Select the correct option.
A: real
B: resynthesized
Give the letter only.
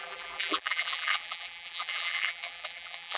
B